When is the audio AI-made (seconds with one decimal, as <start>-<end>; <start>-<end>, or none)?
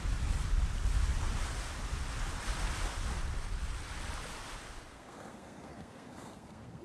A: 4.9-6.8